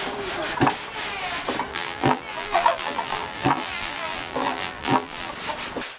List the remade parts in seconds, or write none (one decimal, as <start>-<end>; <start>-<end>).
1.7-5.3